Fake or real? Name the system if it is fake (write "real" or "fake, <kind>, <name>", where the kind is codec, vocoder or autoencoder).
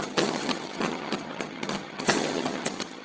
fake, vocoder, HiFi-GAN